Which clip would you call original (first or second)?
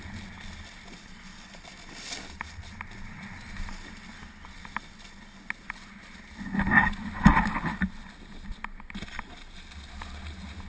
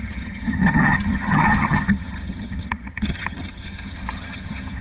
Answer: first